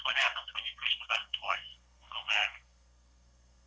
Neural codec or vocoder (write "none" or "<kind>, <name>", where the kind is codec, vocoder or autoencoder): codec, SNAC